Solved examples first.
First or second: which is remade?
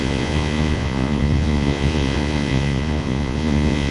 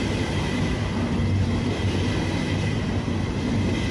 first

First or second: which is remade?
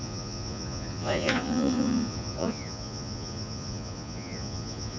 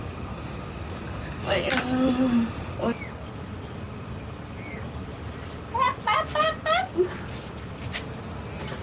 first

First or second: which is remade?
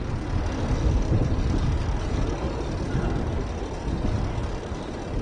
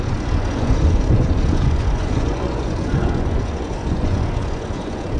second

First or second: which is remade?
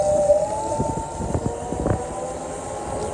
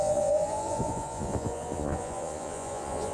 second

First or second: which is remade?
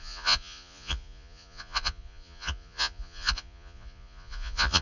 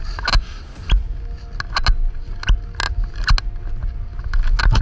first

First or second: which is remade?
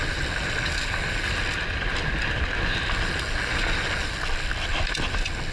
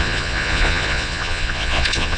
second